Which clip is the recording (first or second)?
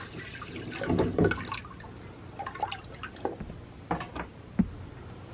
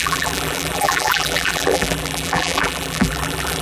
first